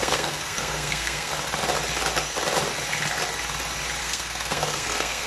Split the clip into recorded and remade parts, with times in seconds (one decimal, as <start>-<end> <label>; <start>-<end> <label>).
0.0-1.3 remade; 1.3-4.0 recorded; 4.0-5.3 remade